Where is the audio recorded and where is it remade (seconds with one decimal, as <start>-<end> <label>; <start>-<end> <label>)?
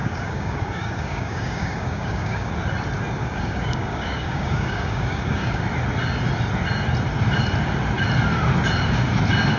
0.0-2.5 remade; 2.5-3.2 recorded; 3.2-5.6 remade; 5.6-9.6 recorded